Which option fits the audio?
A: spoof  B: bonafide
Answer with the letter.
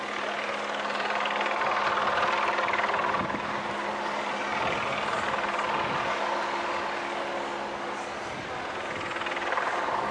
B